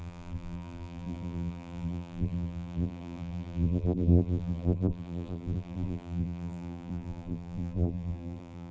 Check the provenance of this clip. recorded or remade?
remade